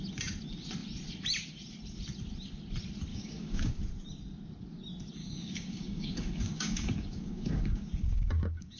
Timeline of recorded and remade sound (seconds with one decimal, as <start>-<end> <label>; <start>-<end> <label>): 0.0-3.1 recorded; 3.1-3.7 remade; 3.7-5.2 recorded; 5.2-8.8 remade